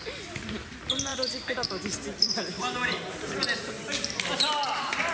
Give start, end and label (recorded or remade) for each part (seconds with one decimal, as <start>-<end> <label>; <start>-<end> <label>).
0.0-5.1 recorded

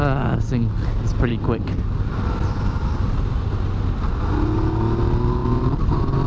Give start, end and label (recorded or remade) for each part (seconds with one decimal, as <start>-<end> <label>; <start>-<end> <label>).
0.0-5.4 recorded; 5.4-6.3 remade

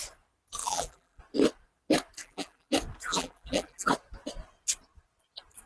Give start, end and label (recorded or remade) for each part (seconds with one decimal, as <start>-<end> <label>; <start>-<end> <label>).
0.0-0.6 recorded; 0.6-1.2 remade; 1.2-2.2 recorded; 2.2-2.7 remade; 2.7-3.1 recorded; 3.1-3.9 remade; 3.9-5.7 recorded

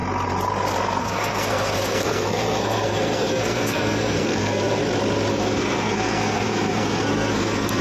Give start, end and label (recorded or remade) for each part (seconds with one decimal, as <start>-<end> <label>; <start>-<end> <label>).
0.0-1.0 recorded; 1.0-4.8 remade; 4.8-5.3 recorded; 5.3-7.8 remade

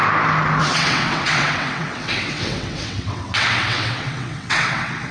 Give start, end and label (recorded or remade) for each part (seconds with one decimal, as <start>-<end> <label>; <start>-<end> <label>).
0.0-0.6 recorded; 0.6-5.1 remade